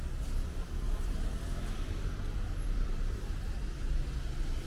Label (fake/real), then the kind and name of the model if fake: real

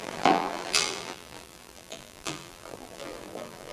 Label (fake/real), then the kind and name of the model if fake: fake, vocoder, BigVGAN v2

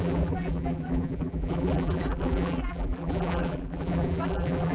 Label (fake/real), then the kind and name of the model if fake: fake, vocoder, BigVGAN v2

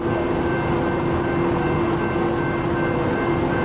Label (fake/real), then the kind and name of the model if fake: real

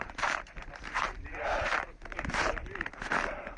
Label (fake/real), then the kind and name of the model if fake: fake, vocoder, BigVGAN v2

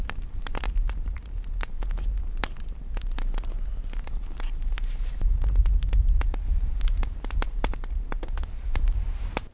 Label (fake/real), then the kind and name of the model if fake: fake, vocoder, BigVGAN v2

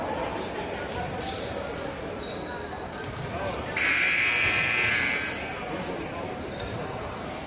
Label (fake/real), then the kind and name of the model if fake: fake, vocoder, BigVGAN v2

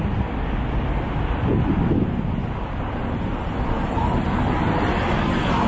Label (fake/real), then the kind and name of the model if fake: real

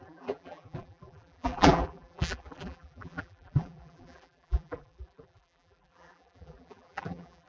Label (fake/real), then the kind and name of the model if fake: fake, vocoder, BigVGAN v2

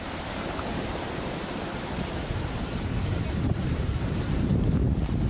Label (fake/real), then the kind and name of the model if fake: fake, vocoder, BigVGAN v2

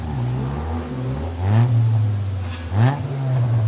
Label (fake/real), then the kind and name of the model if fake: real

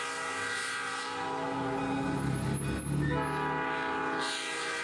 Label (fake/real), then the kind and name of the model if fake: real